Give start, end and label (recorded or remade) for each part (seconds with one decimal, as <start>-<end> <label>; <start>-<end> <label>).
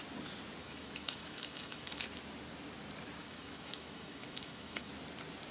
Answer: 0.0-0.6 recorded; 0.6-2.0 remade; 2.0-3.2 recorded; 3.2-4.9 remade; 4.9-5.5 recorded